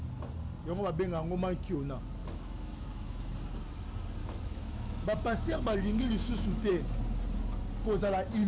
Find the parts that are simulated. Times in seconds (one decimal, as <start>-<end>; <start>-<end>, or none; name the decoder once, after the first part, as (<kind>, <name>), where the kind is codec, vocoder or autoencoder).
2.2-3.3 (autoencoder, DAC-VAE); 4.2-6.7